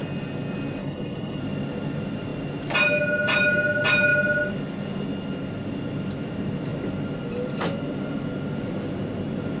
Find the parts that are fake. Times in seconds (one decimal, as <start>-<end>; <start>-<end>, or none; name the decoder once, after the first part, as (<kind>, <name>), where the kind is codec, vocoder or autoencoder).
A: 0.8-1.4 (codec, HILCodec)